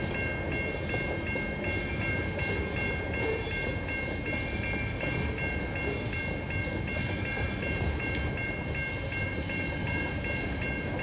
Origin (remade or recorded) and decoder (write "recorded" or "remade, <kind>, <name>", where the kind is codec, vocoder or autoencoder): recorded